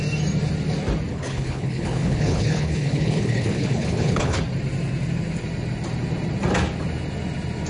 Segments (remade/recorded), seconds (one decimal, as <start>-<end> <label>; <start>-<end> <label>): 0.0-1.1 recorded; 1.1-4.4 remade; 4.4-7.7 recorded